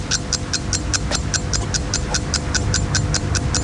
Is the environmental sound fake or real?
real